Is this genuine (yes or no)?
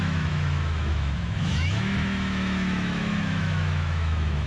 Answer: no